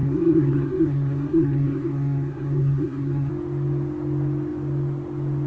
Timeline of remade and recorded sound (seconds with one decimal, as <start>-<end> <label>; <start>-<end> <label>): 0.0-3.3 remade; 3.3-5.5 recorded